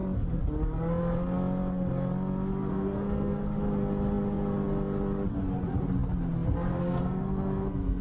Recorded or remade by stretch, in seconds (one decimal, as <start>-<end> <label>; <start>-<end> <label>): 0.0-2.7 recorded; 2.7-3.4 remade; 3.4-6.8 recorded; 6.8-8.0 remade